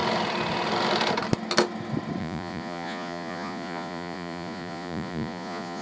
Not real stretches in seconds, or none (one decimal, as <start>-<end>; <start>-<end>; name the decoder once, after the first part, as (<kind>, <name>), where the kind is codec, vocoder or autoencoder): 2.2-5.8 (vocoder, Vocos)